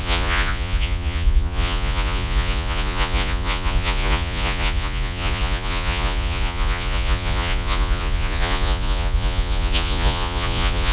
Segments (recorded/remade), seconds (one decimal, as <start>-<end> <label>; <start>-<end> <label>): 0.0-10.9 remade